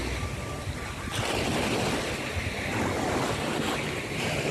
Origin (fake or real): real